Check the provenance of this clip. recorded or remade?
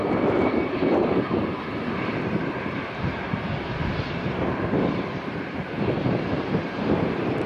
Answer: remade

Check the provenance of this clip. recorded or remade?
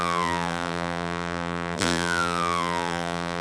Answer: remade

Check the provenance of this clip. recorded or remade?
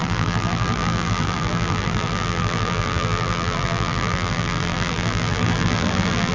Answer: remade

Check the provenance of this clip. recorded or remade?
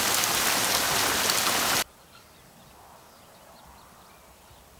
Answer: remade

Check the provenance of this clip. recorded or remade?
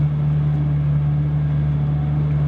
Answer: recorded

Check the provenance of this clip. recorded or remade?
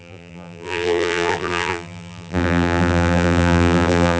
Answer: remade